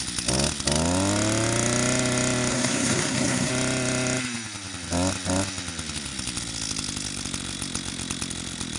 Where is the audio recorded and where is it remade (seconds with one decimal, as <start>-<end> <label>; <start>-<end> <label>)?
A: 0.0-2.5 recorded; 2.5-3.5 remade; 3.5-8.8 recorded